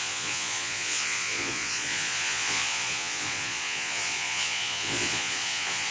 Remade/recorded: remade